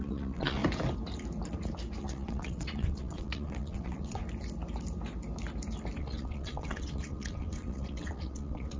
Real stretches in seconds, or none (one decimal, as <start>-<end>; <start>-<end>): 0.6-2.0; 4.2-6.0